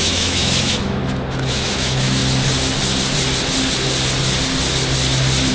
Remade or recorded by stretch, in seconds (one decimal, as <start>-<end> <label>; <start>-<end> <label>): 0.0-1.0 remade; 1.0-1.5 recorded; 1.5-2.2 remade; 2.2-5.5 recorded